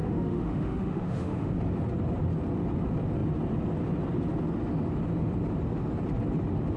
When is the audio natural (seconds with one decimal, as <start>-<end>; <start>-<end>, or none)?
1.5-6.8